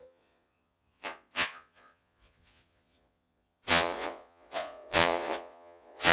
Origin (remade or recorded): remade